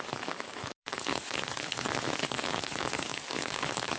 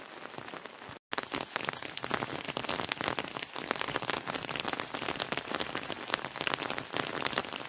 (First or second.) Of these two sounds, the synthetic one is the first